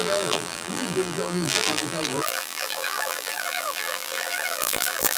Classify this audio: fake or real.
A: fake